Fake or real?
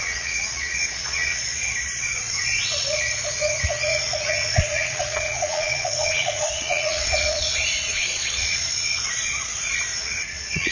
fake